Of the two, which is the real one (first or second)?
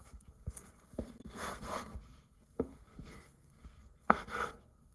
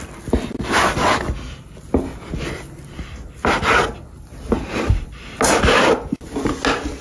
second